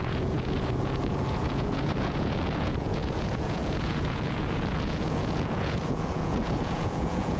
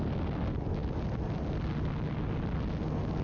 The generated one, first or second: first